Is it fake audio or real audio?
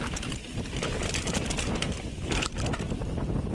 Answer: real